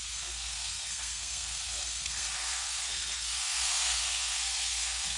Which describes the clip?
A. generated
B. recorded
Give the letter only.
A